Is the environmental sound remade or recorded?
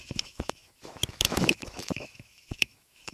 remade